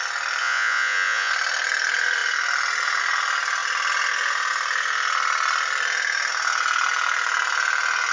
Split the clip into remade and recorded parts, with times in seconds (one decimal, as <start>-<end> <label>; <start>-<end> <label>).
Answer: 0.0-0.4 recorded; 0.4-1.3 remade; 1.3-8.1 recorded

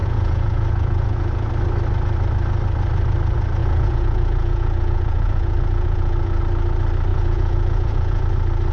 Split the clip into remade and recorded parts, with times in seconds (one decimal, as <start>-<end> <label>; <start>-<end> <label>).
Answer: 0.0-1.5 remade; 1.5-3.6 recorded; 3.6-6.4 remade; 6.4-7.1 recorded; 7.1-8.2 remade; 8.2-8.7 recorded

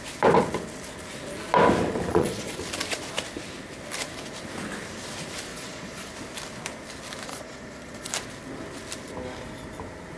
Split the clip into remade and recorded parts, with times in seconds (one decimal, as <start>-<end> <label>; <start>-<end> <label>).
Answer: 0.0-2.1 recorded; 2.1-2.6 remade; 2.6-5.5 recorded; 5.5-6.1 remade; 6.1-7.3 recorded; 7.3-8.1 remade; 8.1-10.2 recorded

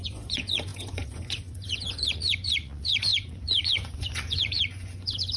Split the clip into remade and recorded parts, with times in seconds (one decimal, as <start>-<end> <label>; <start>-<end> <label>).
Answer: 0.0-5.4 remade

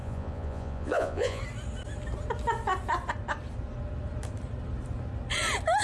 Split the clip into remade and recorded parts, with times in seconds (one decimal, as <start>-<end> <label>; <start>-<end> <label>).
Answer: 0.0-1.4 remade; 1.4-5.8 recorded

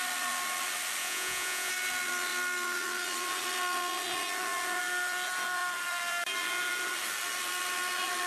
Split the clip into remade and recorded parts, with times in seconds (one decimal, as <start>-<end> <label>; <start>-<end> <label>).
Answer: 0.0-1.0 recorded; 1.0-1.7 remade; 1.7-8.3 recorded

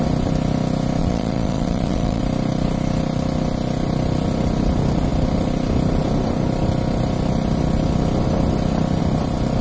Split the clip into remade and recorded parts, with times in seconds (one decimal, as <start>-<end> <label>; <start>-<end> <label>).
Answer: 0.0-1.0 recorded; 1.0-2.2 remade; 2.2-9.6 recorded